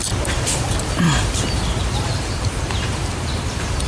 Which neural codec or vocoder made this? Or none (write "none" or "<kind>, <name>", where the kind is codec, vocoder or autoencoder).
vocoder, BigVGAN v2